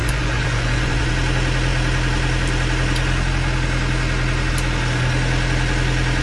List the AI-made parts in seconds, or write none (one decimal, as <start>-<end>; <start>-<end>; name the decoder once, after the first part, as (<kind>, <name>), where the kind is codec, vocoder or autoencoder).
0.0-1.1 (vocoder, Vocos)